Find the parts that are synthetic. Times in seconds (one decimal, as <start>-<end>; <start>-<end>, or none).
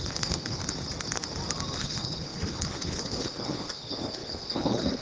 0.0-0.6; 1.8-5.0